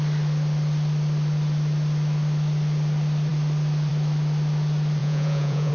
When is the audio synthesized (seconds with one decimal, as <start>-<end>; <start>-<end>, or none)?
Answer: 5.0-5.7